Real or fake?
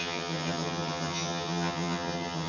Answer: fake